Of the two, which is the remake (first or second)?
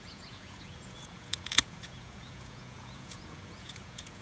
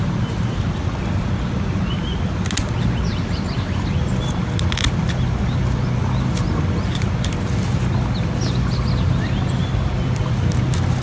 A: first